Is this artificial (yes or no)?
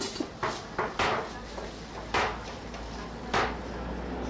no